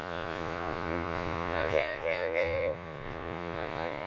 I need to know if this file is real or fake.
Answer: fake